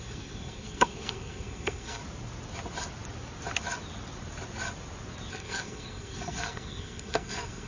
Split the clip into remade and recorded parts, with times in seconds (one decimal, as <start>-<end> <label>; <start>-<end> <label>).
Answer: 0.0-2.0 remade; 2.0-5.3 recorded; 5.3-7.7 remade